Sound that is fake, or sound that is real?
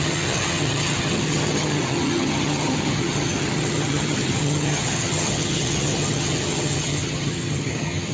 fake